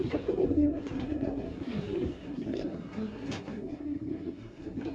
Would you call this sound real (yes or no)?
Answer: no